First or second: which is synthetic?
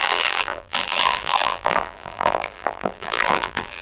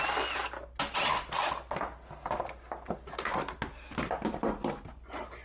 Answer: first